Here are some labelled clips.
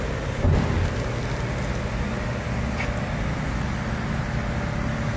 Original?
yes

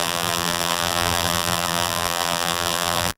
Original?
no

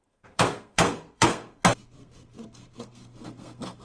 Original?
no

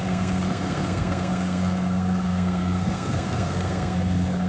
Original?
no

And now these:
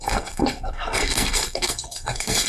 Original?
no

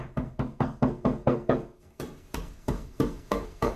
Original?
no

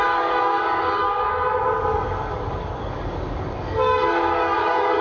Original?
no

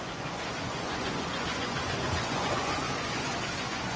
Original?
no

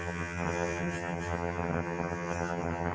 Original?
no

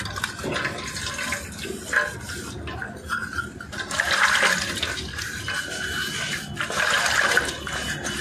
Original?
yes